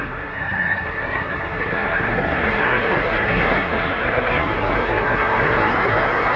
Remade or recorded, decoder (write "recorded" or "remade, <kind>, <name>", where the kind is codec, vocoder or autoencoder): remade, codec, SNAC